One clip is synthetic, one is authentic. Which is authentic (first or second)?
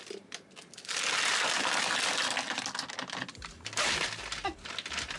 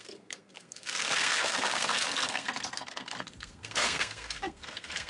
first